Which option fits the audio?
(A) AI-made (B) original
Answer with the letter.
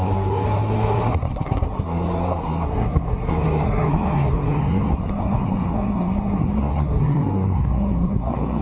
A